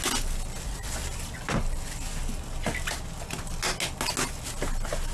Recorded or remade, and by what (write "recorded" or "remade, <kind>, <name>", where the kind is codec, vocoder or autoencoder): recorded